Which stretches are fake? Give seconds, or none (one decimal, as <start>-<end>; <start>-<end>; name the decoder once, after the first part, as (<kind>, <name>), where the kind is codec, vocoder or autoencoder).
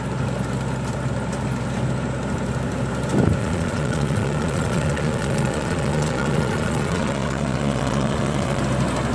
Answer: 3.4-8.6 (vocoder, Vocos)